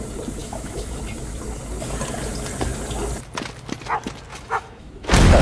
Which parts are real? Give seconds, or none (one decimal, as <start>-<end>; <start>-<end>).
0.0-0.4; 1.0-4.3; 4.9-5.4